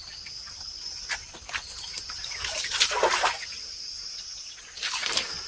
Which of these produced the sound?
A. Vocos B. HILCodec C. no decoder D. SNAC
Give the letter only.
C